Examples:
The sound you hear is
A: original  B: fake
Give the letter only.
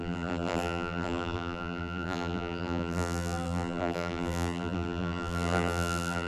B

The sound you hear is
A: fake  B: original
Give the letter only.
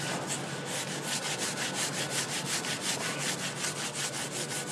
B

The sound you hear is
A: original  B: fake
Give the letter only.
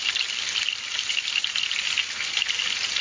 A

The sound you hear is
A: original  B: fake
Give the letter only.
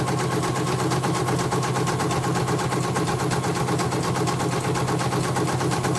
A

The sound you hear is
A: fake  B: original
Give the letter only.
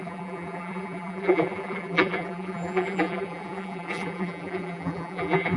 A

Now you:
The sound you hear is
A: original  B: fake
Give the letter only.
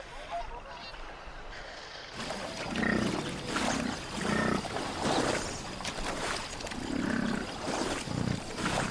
A